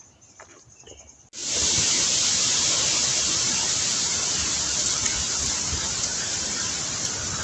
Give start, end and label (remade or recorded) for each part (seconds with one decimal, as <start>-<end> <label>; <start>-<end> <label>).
0.0-1.4 recorded; 1.4-2.3 remade; 2.3-7.4 recorded